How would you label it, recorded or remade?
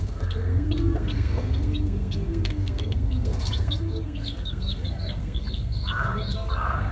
remade